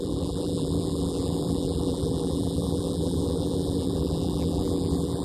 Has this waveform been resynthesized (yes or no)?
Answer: yes